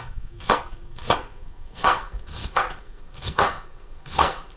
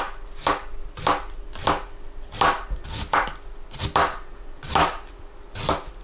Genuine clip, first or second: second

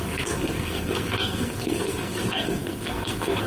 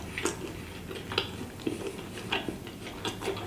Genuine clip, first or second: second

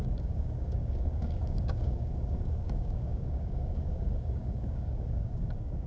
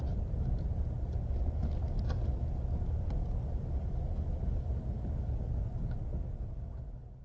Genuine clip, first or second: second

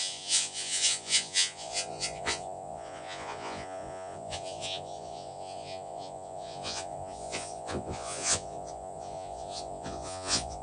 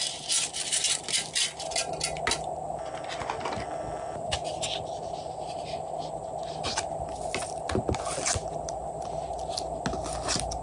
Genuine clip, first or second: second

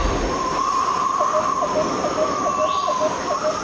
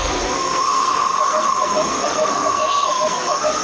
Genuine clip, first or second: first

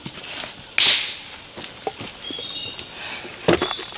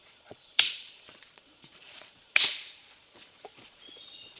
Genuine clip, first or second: first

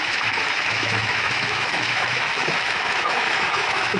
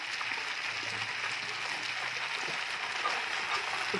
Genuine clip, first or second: second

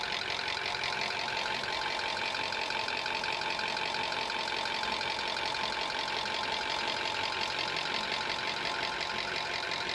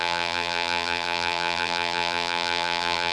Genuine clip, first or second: first